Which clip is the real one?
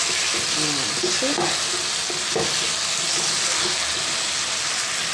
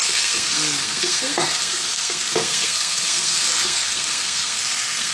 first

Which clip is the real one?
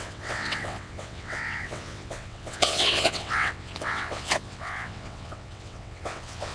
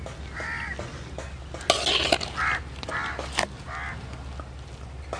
second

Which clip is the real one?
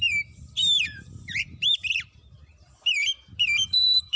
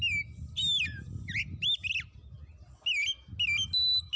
second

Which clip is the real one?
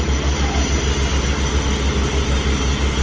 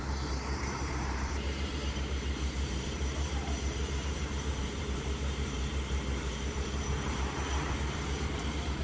first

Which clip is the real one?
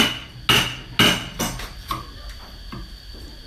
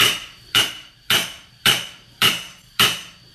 first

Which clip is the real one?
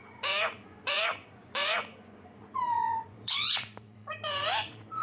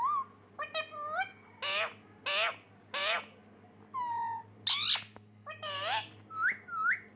second